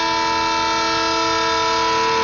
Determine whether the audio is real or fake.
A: real